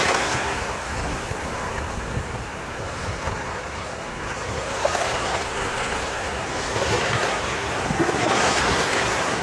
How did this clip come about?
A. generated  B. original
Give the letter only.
A